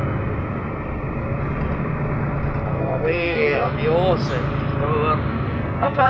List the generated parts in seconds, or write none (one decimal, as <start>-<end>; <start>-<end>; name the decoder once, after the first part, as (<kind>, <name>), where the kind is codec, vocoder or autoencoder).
2.7-3.7 (codec, SNAC); 5.3-6.1